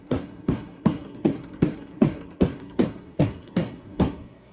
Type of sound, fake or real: fake